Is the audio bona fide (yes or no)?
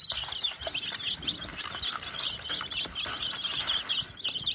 no